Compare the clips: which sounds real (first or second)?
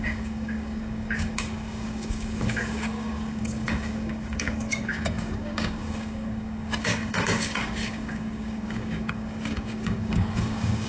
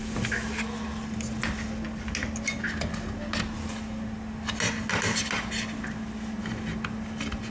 second